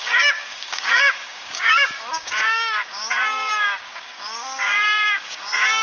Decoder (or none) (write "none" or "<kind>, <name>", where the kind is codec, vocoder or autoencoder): codec, DAC